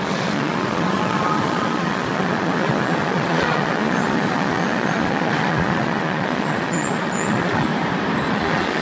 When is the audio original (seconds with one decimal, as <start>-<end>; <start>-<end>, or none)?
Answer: 7.7-8.3